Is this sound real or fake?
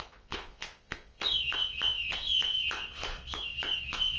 fake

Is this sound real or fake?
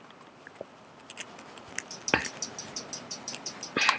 real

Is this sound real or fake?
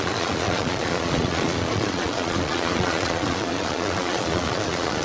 fake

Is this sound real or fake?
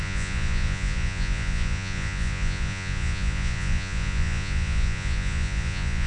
fake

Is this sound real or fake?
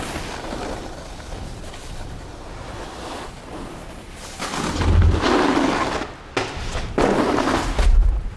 real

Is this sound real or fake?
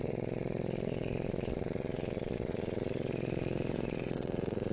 fake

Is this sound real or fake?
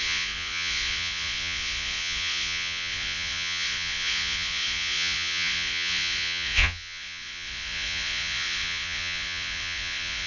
fake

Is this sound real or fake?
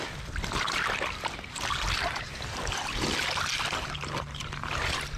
real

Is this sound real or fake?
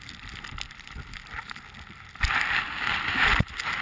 real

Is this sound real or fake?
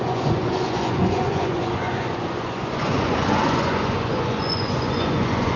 fake